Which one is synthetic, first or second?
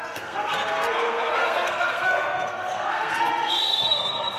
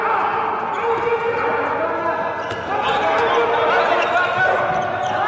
first